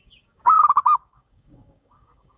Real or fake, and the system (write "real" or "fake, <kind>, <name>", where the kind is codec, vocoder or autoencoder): fake, codec, DAC